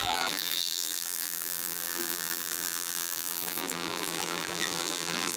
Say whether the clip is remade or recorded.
remade